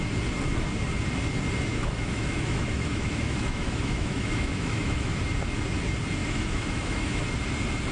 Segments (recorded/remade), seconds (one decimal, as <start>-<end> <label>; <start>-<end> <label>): 0.0-1.7 recorded; 1.7-5.2 remade; 5.2-6.2 recorded; 6.2-7.2 remade; 7.2-7.9 recorded